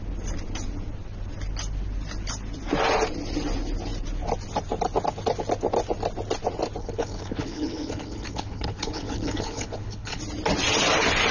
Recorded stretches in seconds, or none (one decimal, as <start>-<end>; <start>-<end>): 0.0-6.8; 10.2-11.3